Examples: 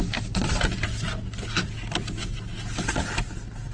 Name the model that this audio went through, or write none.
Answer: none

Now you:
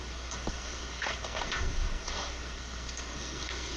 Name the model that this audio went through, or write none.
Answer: codec, SNAC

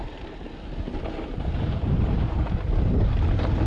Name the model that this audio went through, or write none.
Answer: vocoder, BigVGAN v2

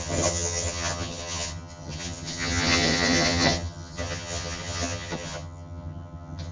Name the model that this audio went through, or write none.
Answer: vocoder, HiFi-GAN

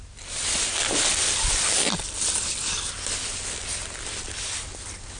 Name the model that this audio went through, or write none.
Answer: none